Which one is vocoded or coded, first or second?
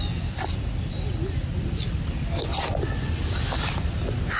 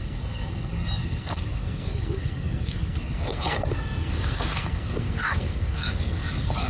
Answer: second